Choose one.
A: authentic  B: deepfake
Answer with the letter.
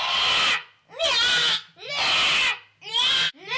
A